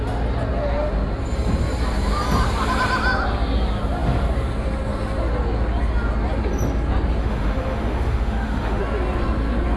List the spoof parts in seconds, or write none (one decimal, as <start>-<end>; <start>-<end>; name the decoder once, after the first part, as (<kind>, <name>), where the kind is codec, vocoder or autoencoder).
7.2-8.8 (autoencoder, DAC-VAE)